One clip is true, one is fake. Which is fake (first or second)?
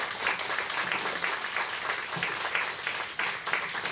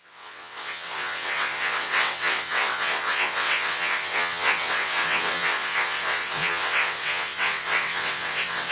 second